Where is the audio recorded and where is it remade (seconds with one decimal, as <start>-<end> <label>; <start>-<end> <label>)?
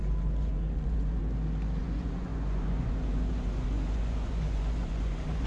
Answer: 0.0-1.2 remade; 1.2-1.8 recorded; 1.8-5.5 remade